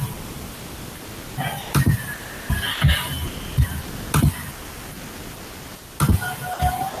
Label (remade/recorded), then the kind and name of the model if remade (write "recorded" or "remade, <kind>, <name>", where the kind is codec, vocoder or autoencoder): recorded